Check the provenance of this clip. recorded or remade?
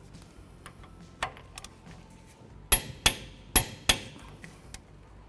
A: recorded